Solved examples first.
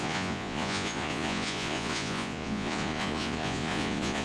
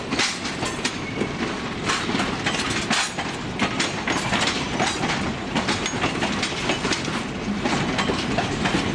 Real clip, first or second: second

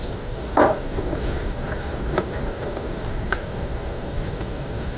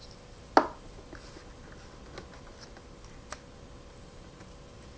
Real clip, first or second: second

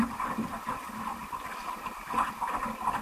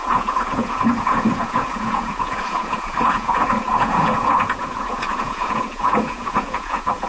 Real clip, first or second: first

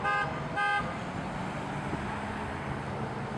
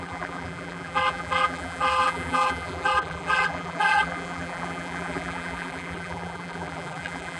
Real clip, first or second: first